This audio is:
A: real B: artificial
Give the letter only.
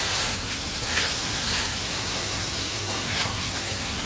B